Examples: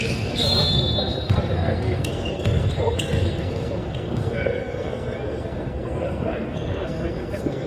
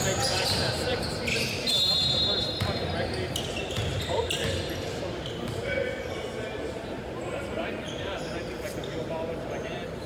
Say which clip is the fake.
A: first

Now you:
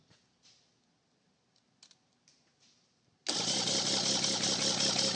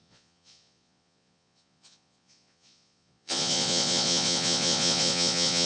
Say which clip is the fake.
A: second